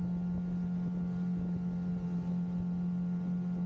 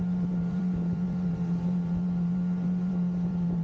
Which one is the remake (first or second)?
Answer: second